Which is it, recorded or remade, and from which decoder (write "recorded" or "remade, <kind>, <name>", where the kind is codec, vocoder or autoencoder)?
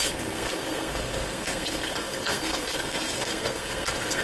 remade, codec, SNAC